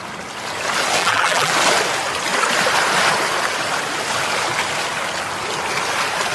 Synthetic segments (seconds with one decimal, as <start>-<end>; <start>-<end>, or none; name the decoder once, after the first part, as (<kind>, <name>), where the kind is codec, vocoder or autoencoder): 1.0-1.5 (vocoder, BigVGAN v2)